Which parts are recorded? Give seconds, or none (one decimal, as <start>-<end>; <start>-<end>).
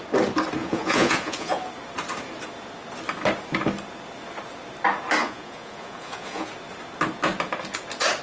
0.0-0.6; 1.6-5.2; 6.5-8.2